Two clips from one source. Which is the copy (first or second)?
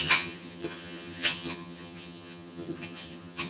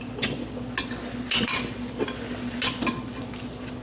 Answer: first